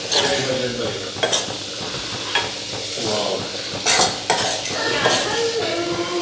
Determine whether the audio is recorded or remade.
recorded